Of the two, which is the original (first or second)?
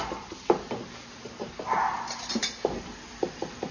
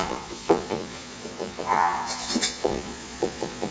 first